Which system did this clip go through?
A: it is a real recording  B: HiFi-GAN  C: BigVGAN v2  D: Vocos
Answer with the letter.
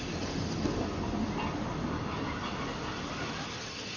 A